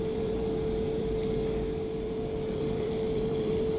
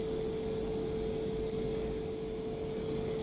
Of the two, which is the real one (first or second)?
second